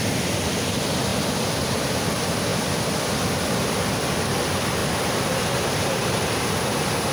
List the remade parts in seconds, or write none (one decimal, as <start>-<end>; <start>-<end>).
none